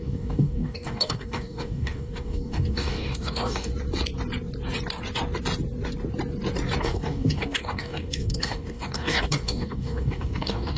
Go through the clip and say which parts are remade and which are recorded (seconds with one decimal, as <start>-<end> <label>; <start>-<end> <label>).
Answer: 0.0-3.7 remade; 3.7-6.8 recorded; 6.8-10.8 remade